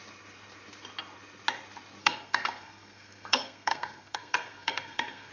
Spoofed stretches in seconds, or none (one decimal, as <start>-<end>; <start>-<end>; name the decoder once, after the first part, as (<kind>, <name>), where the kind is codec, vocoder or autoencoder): 2.0-5.3 (codec, SNAC)